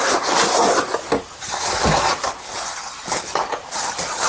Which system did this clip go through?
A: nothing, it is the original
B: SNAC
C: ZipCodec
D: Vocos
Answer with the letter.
A